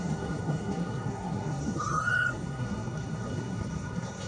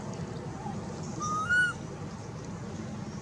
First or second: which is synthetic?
first